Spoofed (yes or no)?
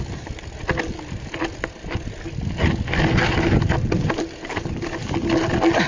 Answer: no